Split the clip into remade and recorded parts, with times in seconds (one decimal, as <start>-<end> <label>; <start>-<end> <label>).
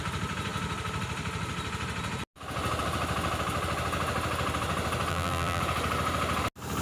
0.0-5.1 recorded; 5.1-5.6 remade; 5.6-6.8 recorded